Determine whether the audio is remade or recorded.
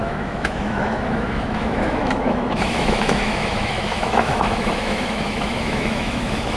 remade